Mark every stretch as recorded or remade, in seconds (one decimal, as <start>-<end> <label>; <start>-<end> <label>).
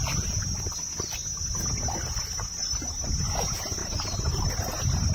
0.0-2.6 recorded; 2.6-3.1 remade; 3.1-3.8 recorded; 3.8-4.5 remade; 4.5-5.1 recorded